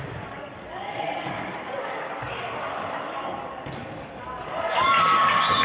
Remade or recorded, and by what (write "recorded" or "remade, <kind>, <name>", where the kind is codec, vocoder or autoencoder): remade, codec, DAC